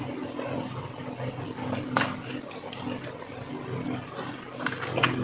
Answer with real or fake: real